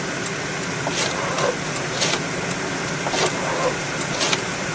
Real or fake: real